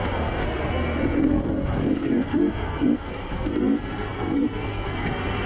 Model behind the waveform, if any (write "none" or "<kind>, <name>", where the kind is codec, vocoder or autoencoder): codec, SNAC